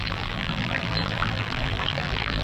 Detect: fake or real fake